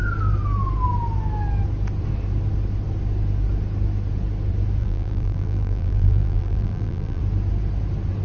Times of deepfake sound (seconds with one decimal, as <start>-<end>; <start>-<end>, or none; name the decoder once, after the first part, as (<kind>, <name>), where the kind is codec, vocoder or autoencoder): 4.8-7.2 (vocoder, BigVGAN v2)